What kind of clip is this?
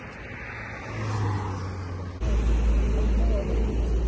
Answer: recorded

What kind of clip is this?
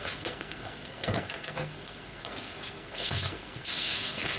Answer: remade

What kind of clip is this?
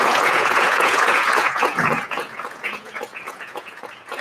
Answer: remade